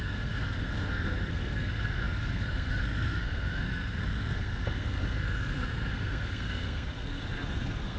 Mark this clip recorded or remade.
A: remade